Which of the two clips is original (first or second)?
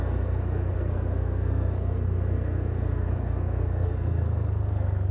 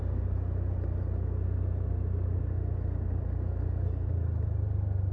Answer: second